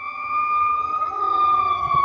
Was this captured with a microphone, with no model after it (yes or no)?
no